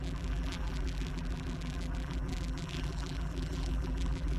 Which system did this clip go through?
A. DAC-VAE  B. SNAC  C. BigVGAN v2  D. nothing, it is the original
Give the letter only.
C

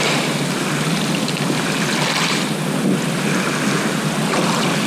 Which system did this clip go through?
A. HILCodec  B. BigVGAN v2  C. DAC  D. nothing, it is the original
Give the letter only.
D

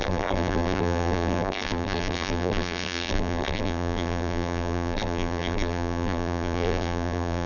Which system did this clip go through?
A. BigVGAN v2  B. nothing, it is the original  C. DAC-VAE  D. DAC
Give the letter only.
A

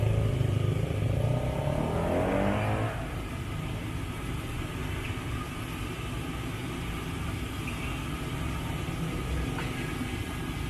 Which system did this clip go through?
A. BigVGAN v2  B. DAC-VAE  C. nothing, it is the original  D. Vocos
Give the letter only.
C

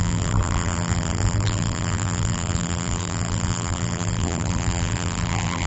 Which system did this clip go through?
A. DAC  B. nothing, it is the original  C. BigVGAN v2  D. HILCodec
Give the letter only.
C